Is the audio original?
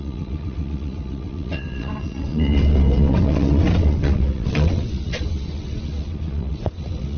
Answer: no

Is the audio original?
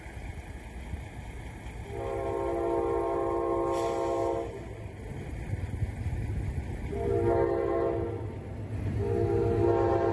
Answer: yes